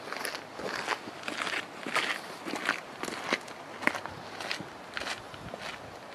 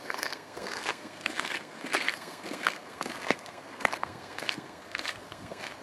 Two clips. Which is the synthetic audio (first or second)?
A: second